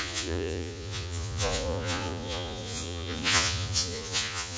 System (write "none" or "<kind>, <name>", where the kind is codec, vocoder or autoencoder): vocoder, Vocos